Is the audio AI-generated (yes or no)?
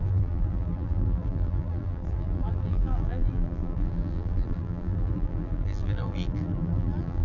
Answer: yes